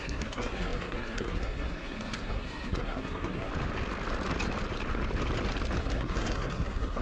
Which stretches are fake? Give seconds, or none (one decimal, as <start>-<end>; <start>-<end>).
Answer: 0.0-3.5; 5.8-7.0